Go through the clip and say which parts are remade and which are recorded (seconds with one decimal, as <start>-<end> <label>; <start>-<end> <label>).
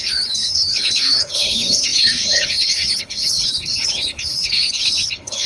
0.0-5.5 remade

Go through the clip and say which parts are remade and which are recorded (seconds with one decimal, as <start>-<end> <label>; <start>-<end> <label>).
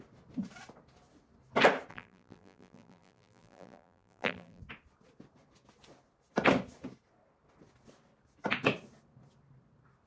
0.0-1.9 recorded; 1.9-4.6 remade; 4.6-10.1 recorded